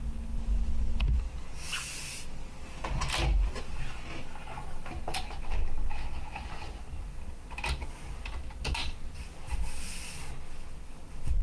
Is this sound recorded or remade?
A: recorded